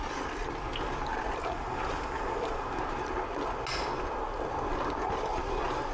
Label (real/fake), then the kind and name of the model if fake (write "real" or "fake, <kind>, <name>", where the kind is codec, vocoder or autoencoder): real